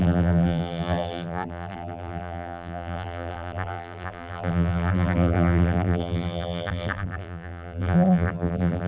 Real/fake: fake